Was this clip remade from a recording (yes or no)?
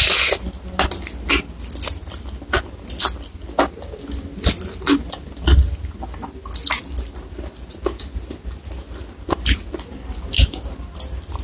no